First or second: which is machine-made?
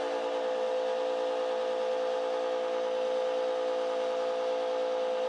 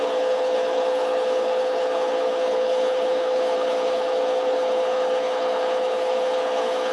second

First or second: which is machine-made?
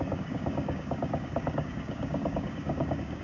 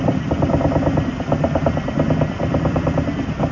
first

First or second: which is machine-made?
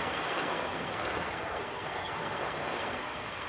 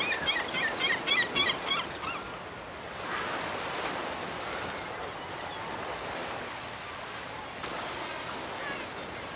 first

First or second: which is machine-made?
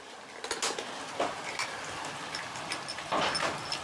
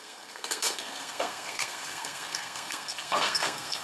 second